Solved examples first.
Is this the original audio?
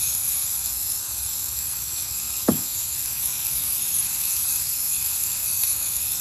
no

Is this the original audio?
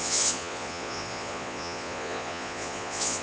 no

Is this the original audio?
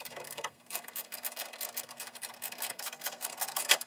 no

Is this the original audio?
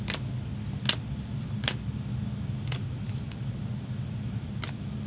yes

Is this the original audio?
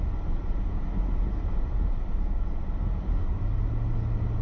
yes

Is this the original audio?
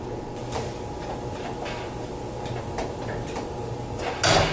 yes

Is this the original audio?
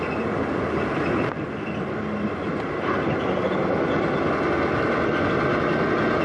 yes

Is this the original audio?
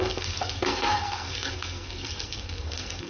no